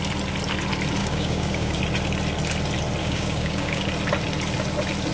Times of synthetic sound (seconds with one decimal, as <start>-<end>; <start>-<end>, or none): 1.0-1.8; 3.0-3.8